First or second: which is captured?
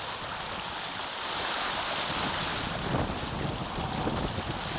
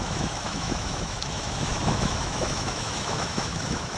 first